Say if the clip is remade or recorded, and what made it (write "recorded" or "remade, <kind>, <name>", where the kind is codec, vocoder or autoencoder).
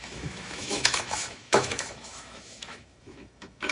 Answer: remade, autoencoder, DAC-VAE